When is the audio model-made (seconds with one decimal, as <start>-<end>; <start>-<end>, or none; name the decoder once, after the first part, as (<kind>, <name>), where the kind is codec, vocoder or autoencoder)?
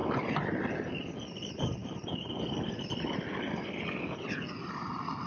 0.0-5.3 (vocoder, BigVGAN v2)